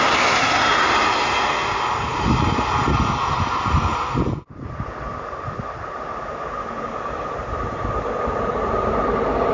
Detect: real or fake real